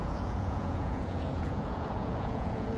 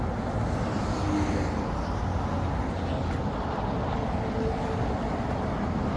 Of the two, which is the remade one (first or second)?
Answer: first